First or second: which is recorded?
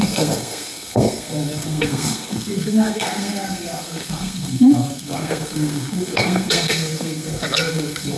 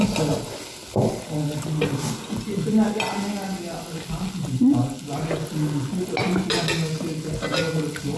second